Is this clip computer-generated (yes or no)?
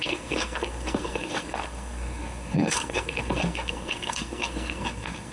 yes